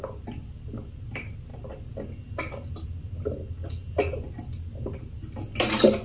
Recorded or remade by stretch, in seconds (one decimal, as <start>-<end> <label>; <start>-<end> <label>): 0.0-6.0 recorded